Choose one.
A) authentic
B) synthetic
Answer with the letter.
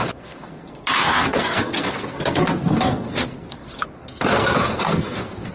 B